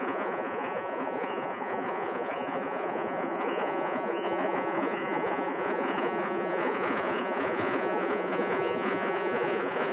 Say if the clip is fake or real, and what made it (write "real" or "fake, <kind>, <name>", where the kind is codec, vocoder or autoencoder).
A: fake, vocoder, Vocos